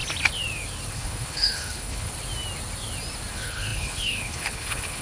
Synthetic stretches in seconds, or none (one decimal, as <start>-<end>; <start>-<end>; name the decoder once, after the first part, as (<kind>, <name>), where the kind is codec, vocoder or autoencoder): 0.9-2.1 (codec, HILCodec); 3.3-5.0